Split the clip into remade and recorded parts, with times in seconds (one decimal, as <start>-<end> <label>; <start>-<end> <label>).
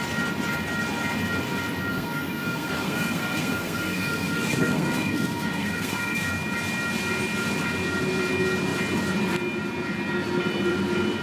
0.0-1.9 recorded; 1.9-6.3 remade; 6.3-11.2 recorded